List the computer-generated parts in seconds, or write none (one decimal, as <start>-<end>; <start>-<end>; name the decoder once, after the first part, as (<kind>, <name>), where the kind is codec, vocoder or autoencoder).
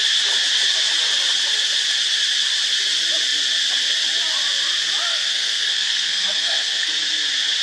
5.1-6.9 (codec, SNAC)